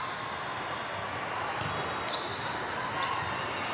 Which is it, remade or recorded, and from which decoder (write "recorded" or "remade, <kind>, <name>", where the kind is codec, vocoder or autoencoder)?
recorded